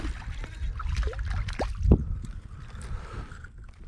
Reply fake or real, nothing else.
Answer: real